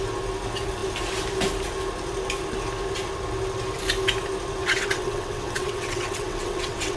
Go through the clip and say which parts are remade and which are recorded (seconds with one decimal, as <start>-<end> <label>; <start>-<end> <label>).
0.0-4.6 recorded; 4.6-7.0 remade